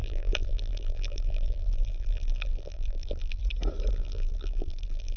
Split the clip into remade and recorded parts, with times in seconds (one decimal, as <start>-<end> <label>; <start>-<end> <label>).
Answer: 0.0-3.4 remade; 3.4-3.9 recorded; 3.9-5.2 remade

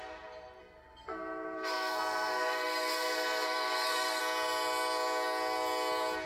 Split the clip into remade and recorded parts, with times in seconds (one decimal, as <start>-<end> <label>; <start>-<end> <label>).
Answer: 0.0-0.6 recorded; 0.6-4.2 remade; 4.2-6.3 recorded

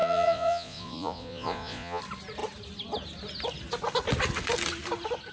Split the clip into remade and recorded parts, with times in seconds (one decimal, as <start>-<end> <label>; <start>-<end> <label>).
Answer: 0.0-2.0 remade; 2.0-5.3 recorded